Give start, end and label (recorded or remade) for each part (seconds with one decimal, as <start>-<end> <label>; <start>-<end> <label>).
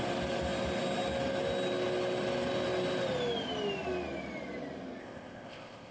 0.0-5.0 recorded; 5.0-5.9 remade